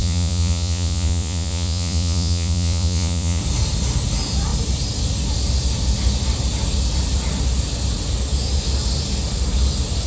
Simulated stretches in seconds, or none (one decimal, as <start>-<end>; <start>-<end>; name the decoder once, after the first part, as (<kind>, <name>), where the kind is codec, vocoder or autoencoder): 0.0-3.4 (vocoder, Vocos)